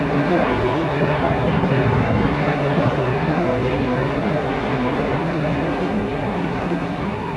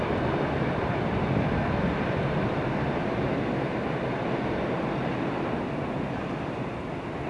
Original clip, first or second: second